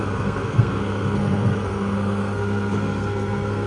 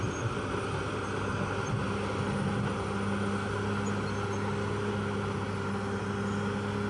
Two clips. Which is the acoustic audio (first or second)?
second